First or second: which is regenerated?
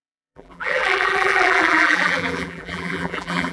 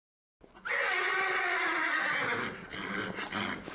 first